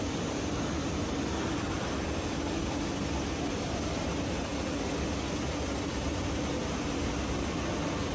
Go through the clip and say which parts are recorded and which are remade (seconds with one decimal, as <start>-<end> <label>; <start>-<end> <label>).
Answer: 0.0-8.1 recorded